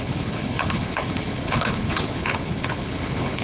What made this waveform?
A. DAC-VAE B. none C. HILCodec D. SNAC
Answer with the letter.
C